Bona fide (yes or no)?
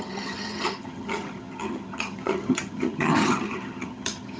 no